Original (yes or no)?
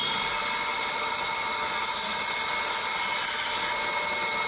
yes